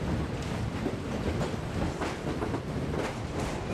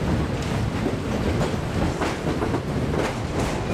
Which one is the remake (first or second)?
first